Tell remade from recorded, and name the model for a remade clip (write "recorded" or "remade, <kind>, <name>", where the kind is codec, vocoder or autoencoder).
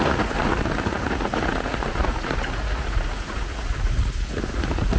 remade, vocoder, Vocos